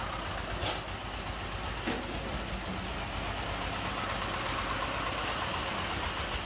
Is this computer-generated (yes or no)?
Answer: no